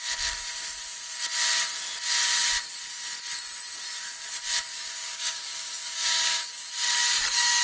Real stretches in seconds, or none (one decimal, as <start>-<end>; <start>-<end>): 0.0-4.7; 6.7-7.6